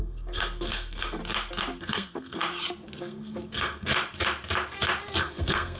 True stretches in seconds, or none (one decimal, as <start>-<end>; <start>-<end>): 1.2-1.8; 2.4-3.0; 3.9-5.2